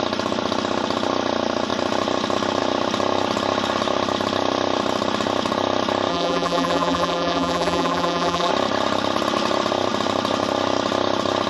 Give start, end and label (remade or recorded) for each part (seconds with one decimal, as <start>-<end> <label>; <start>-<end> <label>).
0.0-6.1 recorded; 6.1-8.5 remade; 8.5-11.5 recorded